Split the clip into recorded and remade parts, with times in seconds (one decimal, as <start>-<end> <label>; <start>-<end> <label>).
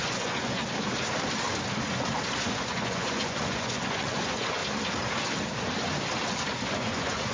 0.0-0.6 remade; 0.6-2.4 recorded; 2.4-4.6 remade; 4.6-6.7 recorded; 6.7-7.3 remade